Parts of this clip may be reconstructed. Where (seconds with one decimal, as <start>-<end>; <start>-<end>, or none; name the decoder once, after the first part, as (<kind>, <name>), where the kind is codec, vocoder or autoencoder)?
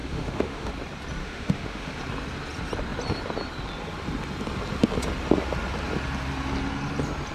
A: 0.0-0.7 (autoencoder, DAC-VAE); 1.2-2.0